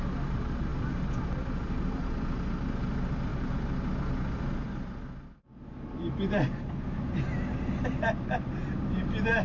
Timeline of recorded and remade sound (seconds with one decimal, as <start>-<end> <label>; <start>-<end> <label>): 0.0-9.4 recorded